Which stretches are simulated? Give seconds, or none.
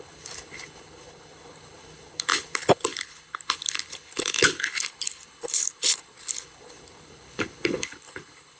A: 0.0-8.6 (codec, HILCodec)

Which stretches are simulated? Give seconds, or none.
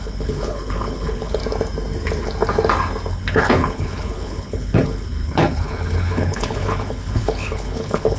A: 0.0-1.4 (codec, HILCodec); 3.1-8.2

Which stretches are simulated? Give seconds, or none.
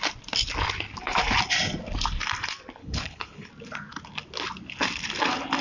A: 2.8-3.5 (codec, HILCodec)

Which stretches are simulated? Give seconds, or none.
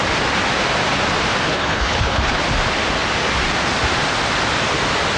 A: 1.5-2.4 (codec, HILCodec)